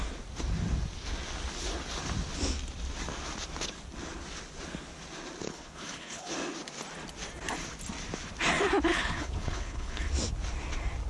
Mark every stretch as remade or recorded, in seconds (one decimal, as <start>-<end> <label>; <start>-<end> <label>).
0.0-5.4 recorded; 5.4-6.3 remade; 6.3-8.9 recorded; 8.9-10.1 remade; 10.1-11.1 recorded